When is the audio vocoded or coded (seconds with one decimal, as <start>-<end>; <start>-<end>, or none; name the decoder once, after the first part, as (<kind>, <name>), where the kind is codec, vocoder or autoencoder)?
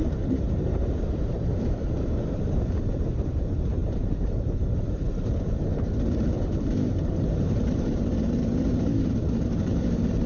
0.0-10.3 (vocoder, BigVGAN v2)